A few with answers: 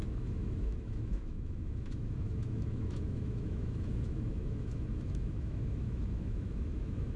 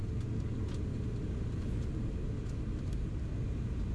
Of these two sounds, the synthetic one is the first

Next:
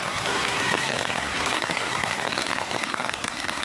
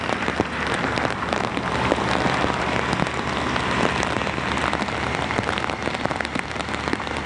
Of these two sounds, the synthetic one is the first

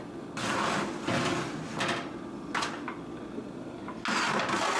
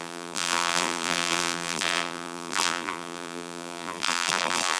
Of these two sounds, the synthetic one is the second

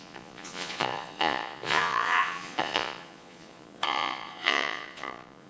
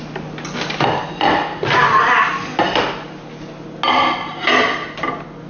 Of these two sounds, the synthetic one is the first